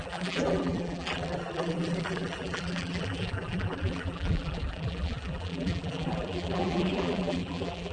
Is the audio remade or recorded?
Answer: remade